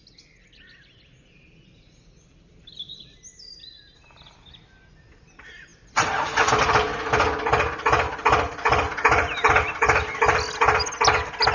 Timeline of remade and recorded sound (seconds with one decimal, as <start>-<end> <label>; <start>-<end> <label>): 0.0-11.5 recorded